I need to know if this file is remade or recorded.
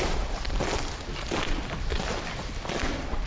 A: recorded